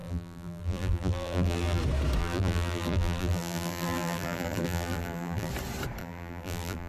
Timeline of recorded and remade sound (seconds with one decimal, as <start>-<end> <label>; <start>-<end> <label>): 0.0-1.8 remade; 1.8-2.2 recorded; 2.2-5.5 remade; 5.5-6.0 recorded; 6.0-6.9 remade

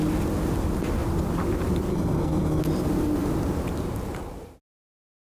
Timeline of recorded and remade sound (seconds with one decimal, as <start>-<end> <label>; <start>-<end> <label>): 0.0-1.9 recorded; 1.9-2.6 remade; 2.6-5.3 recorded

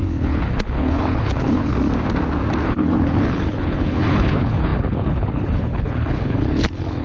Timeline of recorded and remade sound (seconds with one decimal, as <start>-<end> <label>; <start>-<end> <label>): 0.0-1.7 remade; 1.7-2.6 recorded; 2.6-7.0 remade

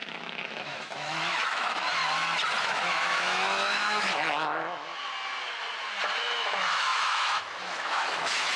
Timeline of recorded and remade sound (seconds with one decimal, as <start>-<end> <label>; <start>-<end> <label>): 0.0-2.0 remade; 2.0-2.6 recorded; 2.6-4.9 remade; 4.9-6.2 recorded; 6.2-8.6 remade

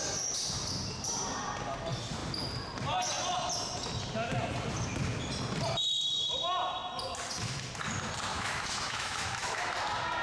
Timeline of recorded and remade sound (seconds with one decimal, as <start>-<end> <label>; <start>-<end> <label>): 0.0-8.3 recorded; 8.3-9.7 remade; 9.7-10.2 recorded